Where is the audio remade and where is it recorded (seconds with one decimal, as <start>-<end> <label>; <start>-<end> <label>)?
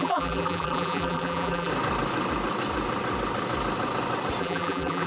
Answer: 0.0-1.7 remade; 1.7-4.4 recorded; 4.4-5.1 remade